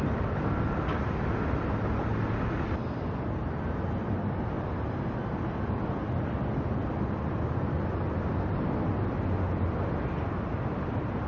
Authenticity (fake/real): real